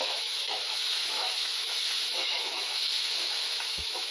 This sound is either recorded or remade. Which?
remade